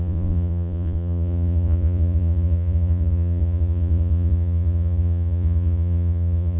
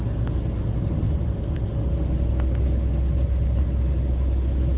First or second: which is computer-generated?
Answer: first